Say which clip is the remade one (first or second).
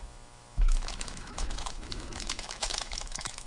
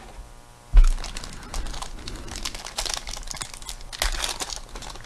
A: first